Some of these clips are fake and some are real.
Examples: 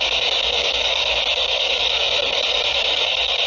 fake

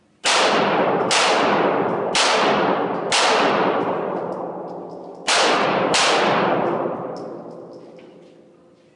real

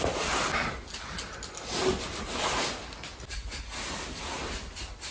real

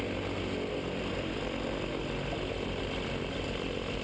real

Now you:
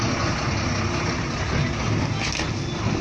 real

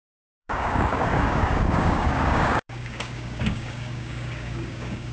fake